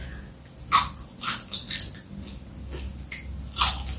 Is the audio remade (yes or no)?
no